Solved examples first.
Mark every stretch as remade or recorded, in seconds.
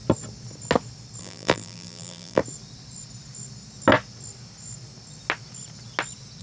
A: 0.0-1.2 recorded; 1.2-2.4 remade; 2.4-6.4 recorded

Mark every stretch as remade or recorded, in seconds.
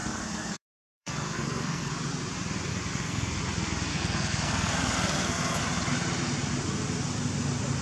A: 0.0-1.9 remade; 1.9-2.7 recorded; 2.7-3.4 remade; 3.4-3.9 recorded; 3.9-5.6 remade; 5.6-7.8 recorded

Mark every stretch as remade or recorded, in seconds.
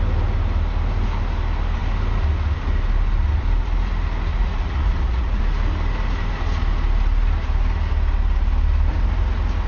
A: 0.0-4.3 recorded; 4.3-5.4 remade; 5.4-9.7 recorded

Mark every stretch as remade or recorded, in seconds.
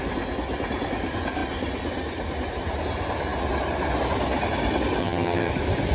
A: 0.0-5.0 recorded; 5.0-5.5 remade; 5.5-5.9 recorded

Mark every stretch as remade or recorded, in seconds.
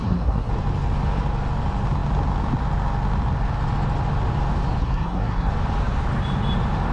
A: 0.0-0.5 remade; 0.5-4.8 recorded; 4.8-5.5 remade; 5.5-6.9 recorded